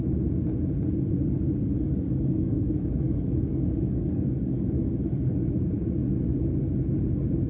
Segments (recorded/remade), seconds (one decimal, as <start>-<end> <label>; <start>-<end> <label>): 0.0-1.7 recorded; 1.7-5.4 remade; 5.4-7.5 recorded